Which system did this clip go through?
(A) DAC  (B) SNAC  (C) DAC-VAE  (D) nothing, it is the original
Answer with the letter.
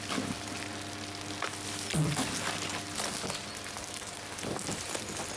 D